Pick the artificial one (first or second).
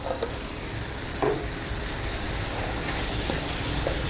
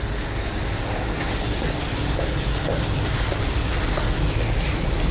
first